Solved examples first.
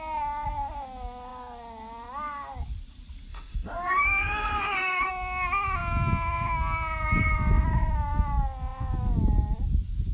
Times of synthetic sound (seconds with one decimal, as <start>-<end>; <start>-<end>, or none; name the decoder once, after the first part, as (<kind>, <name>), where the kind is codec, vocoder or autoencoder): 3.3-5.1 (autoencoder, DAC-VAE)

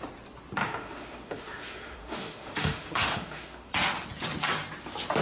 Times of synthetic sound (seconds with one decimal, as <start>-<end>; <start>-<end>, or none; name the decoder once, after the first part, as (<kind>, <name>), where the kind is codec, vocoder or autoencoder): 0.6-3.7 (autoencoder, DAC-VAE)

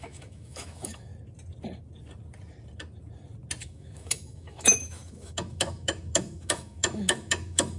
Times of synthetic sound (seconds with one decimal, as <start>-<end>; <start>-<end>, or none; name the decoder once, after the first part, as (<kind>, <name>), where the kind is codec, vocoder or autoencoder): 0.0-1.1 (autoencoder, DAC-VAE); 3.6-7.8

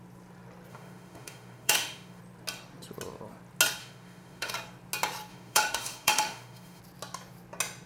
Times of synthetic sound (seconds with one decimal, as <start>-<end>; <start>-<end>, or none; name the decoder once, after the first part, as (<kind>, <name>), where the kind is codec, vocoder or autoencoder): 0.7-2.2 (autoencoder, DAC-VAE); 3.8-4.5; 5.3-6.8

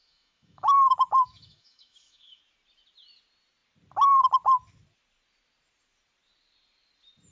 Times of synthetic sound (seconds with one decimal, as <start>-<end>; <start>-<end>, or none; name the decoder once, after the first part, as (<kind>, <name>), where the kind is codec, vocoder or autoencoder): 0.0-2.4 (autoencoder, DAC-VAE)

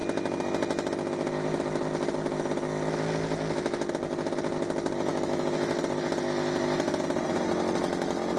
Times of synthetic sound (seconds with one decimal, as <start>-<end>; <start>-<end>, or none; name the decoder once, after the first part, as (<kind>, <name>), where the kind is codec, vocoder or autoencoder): 5.1-5.8 (autoencoder, DAC-VAE)

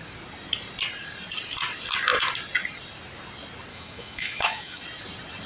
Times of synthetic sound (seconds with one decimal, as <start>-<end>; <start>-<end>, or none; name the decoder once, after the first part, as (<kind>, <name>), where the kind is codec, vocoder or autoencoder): 3.7-4.8 (autoencoder, DAC-VAE)

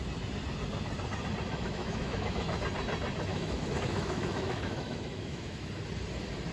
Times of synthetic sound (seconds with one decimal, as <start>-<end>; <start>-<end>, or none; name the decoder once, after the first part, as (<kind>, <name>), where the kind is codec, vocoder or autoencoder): 1.5-2.6 (autoencoder, DAC-VAE); 3.3-5.7